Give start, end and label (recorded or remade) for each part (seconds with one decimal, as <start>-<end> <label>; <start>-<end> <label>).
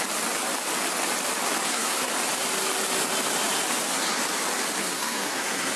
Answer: 0.0-1.6 recorded; 1.6-2.1 remade; 2.1-4.8 recorded; 4.8-5.8 remade